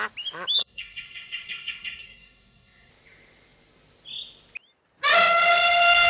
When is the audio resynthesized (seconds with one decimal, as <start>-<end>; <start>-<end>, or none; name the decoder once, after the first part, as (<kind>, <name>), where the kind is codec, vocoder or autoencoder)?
0.6-2.9 (codec, SNAC)